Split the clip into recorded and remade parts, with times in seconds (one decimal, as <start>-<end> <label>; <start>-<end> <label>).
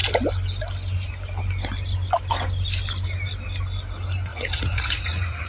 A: 0.0-4.3 recorded; 4.3-5.5 remade